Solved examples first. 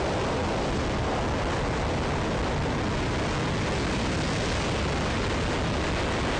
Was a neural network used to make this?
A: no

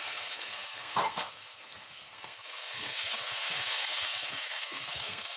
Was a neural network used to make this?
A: yes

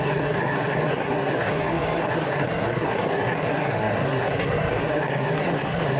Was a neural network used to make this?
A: yes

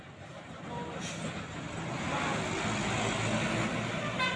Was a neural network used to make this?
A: no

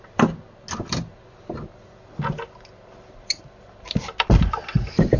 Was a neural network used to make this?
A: no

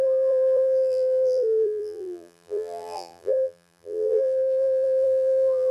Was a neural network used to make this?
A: yes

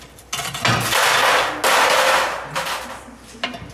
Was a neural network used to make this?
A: no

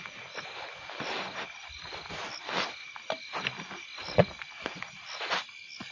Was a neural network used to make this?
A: no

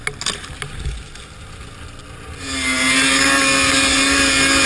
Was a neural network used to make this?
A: no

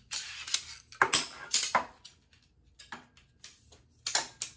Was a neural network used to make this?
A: no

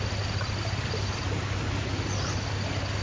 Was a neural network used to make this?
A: no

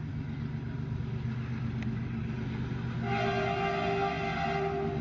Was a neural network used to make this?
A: no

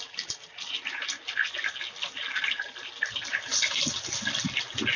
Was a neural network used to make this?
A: no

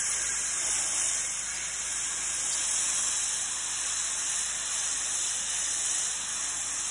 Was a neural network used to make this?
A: no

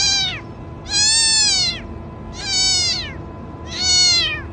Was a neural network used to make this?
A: no